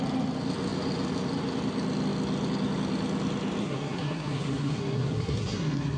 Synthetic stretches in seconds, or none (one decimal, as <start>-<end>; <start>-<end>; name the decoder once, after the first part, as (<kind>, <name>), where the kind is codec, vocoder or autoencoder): 3.6-6.0 (codec, SNAC)